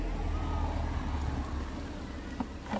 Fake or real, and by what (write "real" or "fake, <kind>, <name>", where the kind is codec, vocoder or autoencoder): real